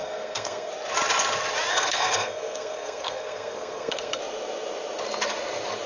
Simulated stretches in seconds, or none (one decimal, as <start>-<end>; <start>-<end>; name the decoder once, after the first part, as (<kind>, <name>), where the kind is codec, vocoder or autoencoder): 0.0-0.7 (codec, SNAC); 1.7-4.2